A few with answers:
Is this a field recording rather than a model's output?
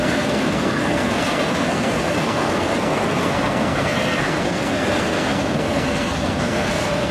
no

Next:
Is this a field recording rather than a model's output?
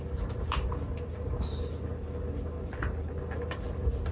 yes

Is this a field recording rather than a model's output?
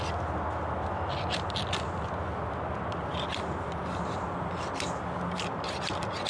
yes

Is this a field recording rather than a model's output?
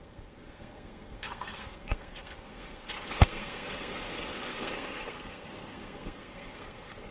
no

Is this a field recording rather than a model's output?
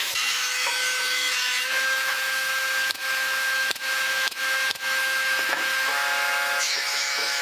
no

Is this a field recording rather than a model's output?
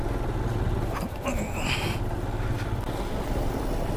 yes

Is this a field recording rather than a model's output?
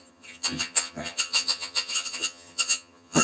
no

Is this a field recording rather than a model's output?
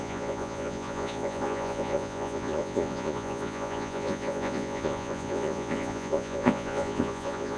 no